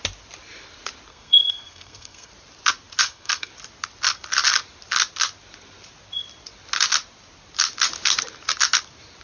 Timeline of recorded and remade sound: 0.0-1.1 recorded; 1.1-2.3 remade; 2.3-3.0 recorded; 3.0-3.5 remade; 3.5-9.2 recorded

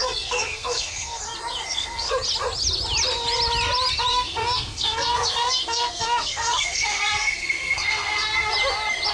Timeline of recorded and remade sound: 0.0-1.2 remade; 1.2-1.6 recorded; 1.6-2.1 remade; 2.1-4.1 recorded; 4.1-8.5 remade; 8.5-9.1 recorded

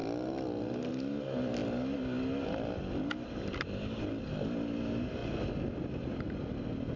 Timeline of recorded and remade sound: 0.0-7.0 recorded